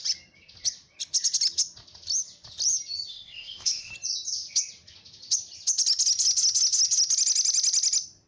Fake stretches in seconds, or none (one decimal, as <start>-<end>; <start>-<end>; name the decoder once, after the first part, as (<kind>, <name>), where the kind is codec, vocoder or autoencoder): 3.1-3.9 (codec, ZipCodec)